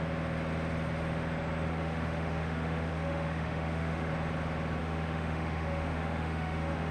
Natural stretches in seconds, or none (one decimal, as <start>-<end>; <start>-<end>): 0.0-1.7; 4.1-4.8